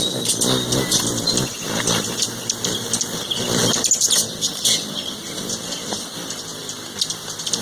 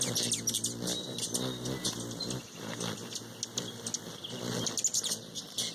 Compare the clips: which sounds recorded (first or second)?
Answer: second